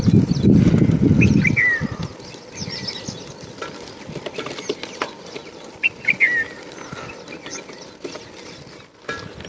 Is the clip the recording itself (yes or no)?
yes